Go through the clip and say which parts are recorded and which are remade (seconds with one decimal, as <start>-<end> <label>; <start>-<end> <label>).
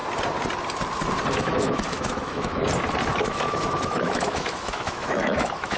0.0-1.3 recorded; 1.3-2.6 remade; 2.6-3.2 recorded; 3.2-5.8 remade